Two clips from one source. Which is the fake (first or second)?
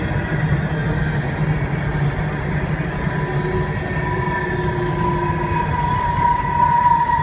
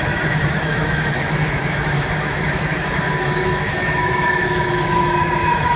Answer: second